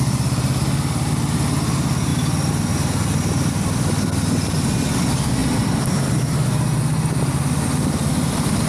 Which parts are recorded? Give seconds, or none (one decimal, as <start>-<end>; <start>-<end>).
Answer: 0.0-2.1; 3.9-5.4; 6.3-8.7